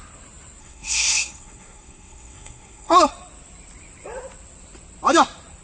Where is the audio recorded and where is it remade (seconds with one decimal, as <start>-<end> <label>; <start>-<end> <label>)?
0.0-0.6 recorded; 0.6-3.1 remade; 3.1-5.6 recorded